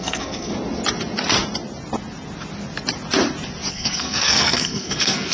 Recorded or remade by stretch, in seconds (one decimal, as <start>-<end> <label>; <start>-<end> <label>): 0.0-0.5 remade; 0.5-3.7 recorded; 3.7-5.3 remade